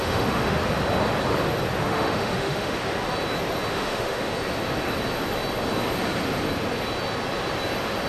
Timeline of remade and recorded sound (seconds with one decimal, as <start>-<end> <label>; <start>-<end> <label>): 0.0-0.6 remade; 0.6-1.8 recorded; 1.8-2.8 remade; 2.8-3.7 recorded; 3.7-4.3 remade; 4.3-8.1 recorded